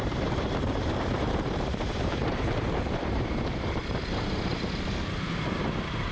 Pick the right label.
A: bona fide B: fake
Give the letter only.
B